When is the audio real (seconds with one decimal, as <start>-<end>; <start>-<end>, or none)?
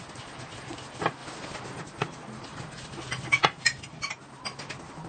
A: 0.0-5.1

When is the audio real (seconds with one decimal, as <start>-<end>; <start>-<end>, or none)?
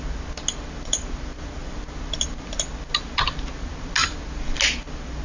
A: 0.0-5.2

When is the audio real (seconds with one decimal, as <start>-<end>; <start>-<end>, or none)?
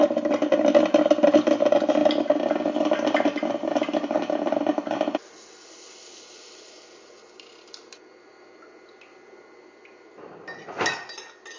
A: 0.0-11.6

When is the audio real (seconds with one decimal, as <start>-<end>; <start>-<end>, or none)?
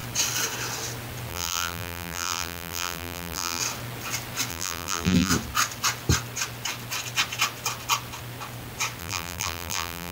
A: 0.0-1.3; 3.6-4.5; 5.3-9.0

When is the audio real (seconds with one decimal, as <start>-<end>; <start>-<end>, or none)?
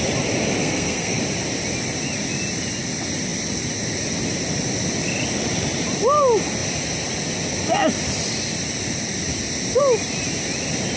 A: 0.0-0.6; 1.2-11.0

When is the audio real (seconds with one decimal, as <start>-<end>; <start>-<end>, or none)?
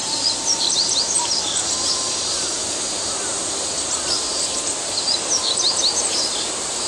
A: 2.6-3.8